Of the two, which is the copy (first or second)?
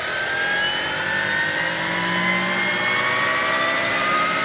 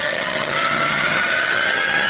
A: second